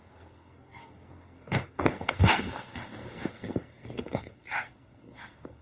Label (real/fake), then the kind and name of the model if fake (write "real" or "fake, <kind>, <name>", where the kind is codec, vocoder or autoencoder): fake, codec, SNAC